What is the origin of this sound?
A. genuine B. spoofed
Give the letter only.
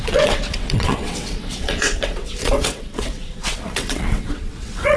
B